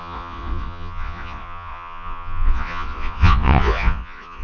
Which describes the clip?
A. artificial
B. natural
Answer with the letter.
A